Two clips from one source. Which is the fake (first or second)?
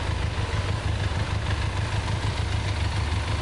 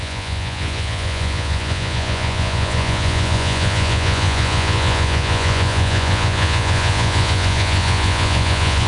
second